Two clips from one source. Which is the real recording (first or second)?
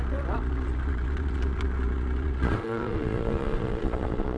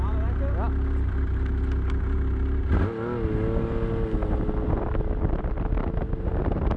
second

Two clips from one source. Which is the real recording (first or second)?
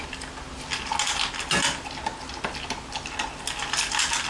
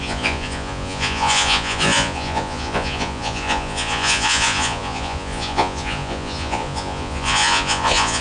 first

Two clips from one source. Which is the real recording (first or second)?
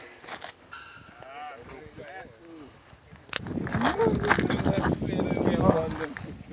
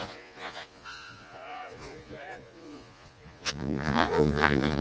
first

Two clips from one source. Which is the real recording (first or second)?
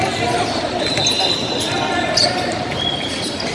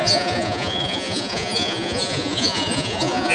first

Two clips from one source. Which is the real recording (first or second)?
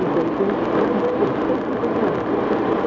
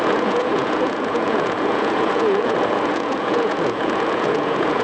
first